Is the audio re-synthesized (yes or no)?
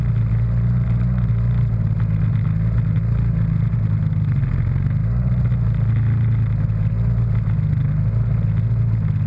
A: no